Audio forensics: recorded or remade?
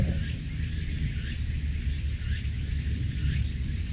recorded